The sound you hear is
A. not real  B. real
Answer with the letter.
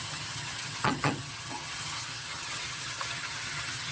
A